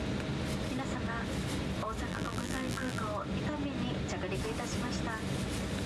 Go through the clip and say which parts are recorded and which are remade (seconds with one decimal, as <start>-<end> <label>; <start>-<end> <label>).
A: 0.0-2.1 recorded; 2.1-3.0 remade; 3.0-5.9 recorded